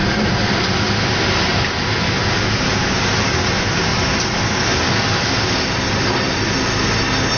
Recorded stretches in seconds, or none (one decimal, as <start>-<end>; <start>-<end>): 0.0-7.4